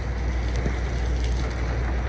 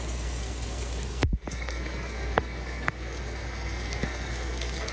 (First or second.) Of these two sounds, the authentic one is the first